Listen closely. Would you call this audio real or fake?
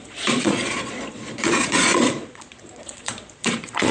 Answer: fake